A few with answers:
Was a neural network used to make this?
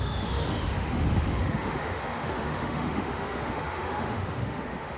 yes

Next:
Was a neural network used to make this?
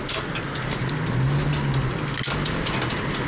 no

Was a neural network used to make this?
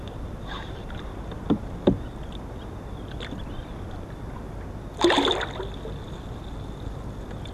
no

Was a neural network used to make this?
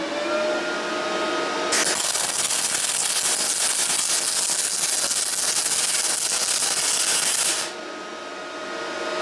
no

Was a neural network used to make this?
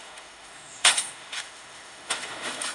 yes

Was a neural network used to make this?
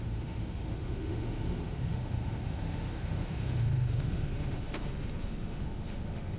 yes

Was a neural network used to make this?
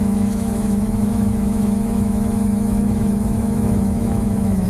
yes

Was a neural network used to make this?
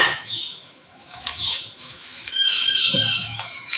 yes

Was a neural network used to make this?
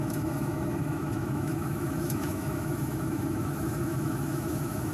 yes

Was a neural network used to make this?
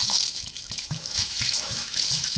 yes